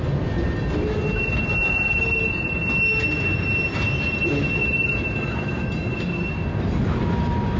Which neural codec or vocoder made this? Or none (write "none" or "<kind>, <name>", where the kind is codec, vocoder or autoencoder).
none